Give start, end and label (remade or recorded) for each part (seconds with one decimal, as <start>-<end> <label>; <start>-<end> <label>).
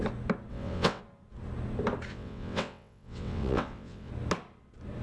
0.0-0.5 recorded; 0.5-1.0 remade; 1.0-2.1 recorded; 2.1-4.1 remade; 4.1-5.0 recorded